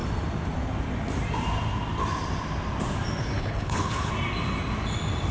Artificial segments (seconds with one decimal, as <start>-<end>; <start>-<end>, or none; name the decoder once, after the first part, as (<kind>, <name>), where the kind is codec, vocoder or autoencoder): 3.2-4.1 (codec, HILCodec)